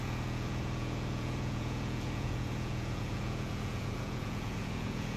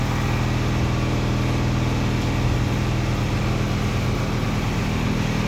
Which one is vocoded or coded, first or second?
first